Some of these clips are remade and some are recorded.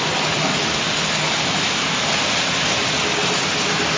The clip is recorded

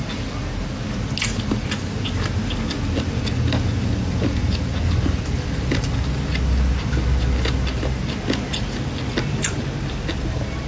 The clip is recorded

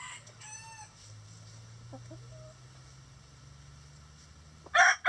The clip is recorded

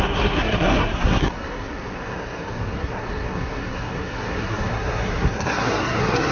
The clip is remade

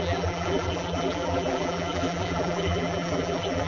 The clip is remade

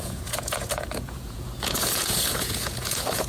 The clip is remade